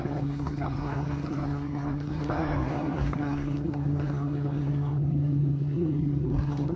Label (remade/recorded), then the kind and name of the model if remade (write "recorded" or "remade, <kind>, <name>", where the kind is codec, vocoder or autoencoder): remade, codec, SNAC